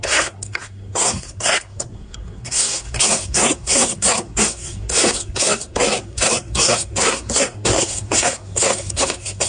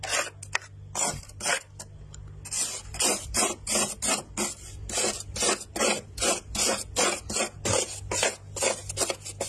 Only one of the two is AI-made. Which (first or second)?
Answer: first